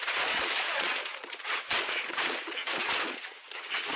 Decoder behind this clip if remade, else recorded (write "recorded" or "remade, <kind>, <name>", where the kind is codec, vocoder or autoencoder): remade, vocoder, Vocos